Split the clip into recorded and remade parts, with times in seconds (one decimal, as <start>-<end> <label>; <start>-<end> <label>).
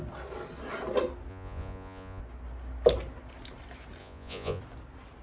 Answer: 0.0-1.3 recorded; 1.3-2.2 remade; 2.2-4.0 recorded; 4.0-4.6 remade; 4.6-5.2 recorded